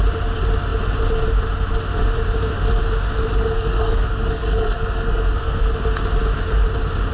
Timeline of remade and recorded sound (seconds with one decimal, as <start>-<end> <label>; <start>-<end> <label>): 0.0-3.4 recorded; 3.4-5.7 remade; 5.7-7.1 recorded